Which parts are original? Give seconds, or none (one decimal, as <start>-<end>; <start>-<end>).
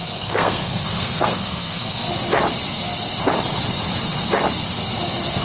2.1-5.4